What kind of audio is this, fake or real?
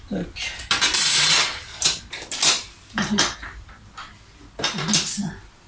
real